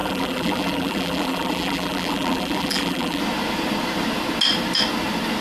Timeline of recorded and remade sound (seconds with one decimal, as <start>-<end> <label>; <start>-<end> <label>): 0.0-3.2 remade; 3.2-5.4 recorded